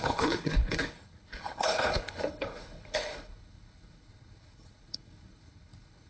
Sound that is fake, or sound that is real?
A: fake